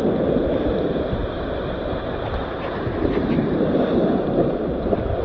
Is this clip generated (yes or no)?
yes